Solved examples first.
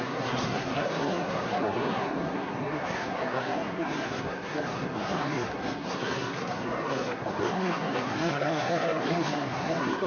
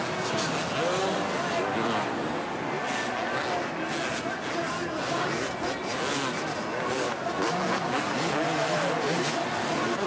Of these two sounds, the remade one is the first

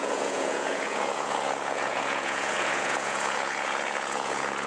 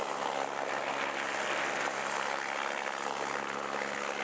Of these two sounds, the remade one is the first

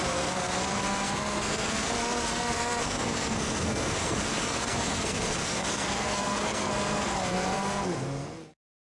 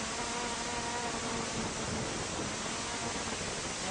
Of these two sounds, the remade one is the first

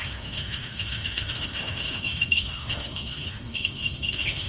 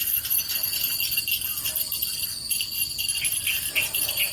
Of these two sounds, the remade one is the first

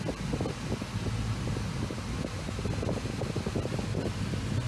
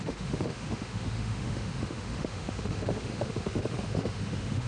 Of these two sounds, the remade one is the second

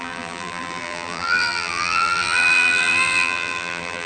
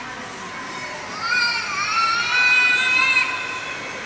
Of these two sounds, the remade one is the first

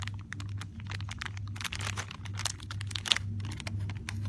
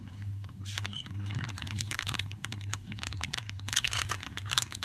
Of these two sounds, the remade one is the second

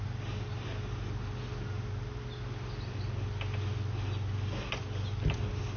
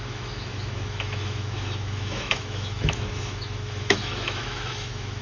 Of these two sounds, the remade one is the second